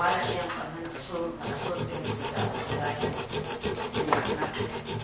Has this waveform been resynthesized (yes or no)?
no